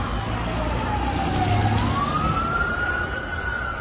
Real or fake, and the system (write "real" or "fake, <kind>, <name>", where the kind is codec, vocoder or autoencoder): real